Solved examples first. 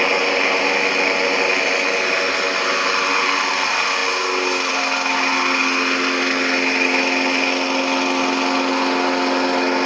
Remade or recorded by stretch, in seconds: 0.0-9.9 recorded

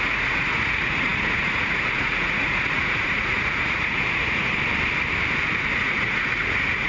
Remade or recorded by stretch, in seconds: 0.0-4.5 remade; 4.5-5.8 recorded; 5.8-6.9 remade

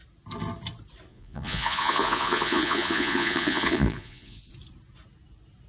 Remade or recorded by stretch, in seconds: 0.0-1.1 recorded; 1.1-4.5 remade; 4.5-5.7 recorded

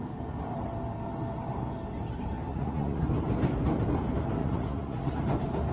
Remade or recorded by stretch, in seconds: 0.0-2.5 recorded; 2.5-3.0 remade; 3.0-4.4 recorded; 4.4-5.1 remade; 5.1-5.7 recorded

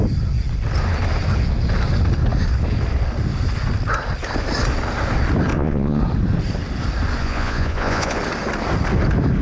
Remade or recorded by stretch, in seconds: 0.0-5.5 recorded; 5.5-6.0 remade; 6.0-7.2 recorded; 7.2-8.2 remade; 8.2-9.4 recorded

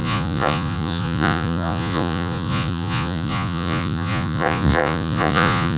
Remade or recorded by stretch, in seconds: 0.0-5.8 remade

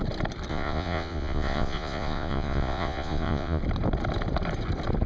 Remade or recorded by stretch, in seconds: 0.0-0.5 recorded; 0.5-3.6 remade; 3.6-5.1 recorded